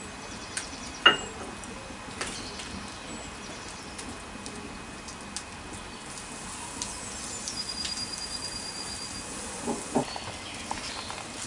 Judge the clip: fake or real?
real